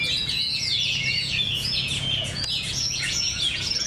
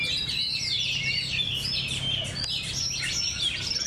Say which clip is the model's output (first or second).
first